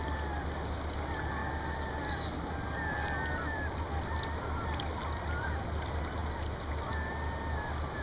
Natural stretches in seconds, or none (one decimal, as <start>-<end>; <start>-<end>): 0.0-8.0